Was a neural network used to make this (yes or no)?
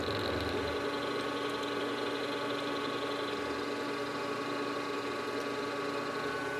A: no